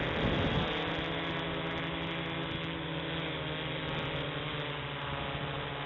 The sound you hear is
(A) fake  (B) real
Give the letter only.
B